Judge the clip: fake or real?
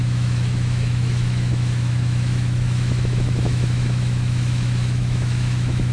fake